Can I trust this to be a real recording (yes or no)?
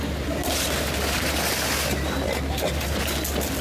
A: yes